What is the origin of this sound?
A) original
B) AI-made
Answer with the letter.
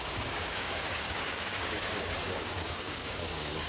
B